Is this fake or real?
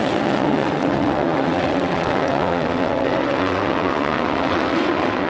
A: fake